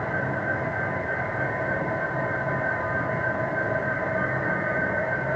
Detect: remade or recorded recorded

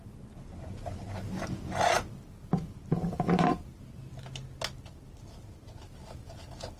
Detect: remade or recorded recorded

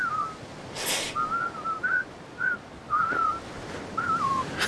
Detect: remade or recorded recorded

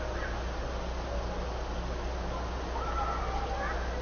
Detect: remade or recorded recorded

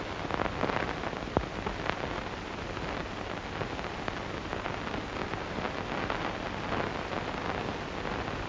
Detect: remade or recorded recorded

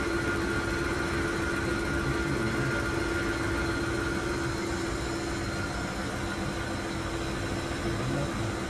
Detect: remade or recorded recorded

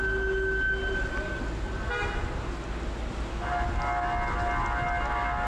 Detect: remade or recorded recorded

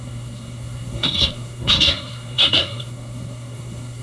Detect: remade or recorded remade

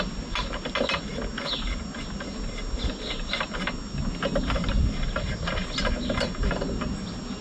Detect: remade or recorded recorded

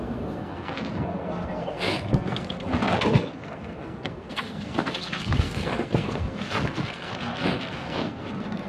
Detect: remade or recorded remade